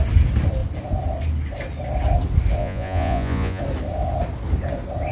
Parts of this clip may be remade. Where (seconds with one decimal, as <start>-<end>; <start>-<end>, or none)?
2.6-3.6